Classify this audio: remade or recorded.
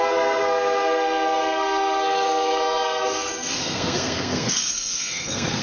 remade